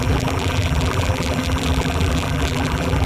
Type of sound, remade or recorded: remade